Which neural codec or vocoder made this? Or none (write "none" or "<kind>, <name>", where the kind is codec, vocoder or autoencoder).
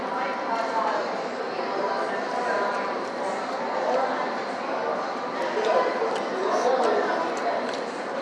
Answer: none